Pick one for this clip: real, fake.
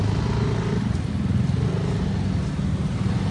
real